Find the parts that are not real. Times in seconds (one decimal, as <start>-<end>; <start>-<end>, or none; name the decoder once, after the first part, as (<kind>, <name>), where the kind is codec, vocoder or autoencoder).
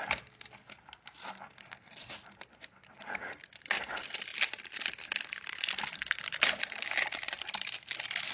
1.6-2.1 (codec, SNAC)